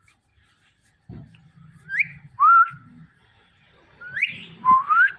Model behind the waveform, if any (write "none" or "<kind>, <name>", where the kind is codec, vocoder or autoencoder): vocoder, BigVGAN v2